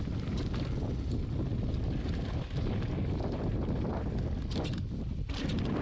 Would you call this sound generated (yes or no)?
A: no